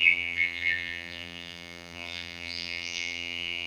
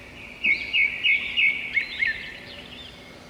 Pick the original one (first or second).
second